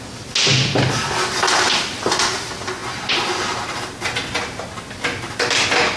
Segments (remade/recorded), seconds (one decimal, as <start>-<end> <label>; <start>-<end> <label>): 0.0-6.0 recorded